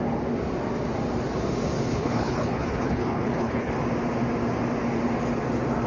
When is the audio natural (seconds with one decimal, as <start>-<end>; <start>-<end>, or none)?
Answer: 0.0-1.9; 3.7-5.9